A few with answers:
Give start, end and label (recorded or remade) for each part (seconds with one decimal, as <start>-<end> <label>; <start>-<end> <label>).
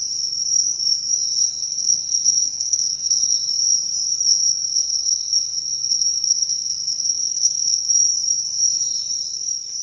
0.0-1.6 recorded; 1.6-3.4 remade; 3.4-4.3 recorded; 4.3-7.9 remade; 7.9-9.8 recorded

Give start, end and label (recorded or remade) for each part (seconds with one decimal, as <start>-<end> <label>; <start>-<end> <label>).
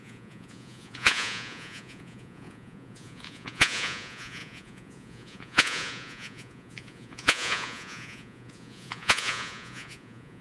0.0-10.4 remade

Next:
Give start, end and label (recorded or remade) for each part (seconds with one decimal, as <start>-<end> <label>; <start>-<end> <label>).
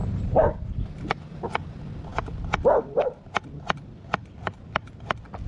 0.0-1.5 remade; 1.5-5.5 recorded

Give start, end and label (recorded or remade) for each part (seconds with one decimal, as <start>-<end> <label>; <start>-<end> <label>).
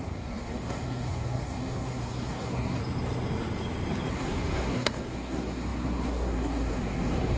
0.0-2.8 remade; 2.8-4.1 recorded; 4.1-7.4 remade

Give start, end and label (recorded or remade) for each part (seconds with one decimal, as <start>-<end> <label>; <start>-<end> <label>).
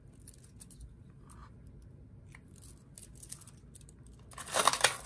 0.0-5.1 recorded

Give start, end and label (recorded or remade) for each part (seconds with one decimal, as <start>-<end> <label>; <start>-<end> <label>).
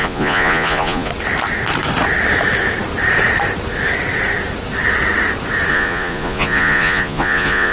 0.0-1.1 remade; 1.1-5.7 recorded; 5.7-7.7 remade